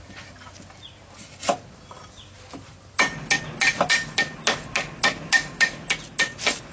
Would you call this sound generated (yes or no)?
no